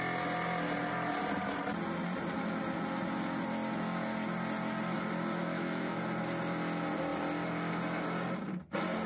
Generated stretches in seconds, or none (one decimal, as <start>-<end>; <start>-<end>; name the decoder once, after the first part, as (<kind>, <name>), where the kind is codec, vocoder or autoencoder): 5.4-6.0 (autoencoder, DAC-VAE)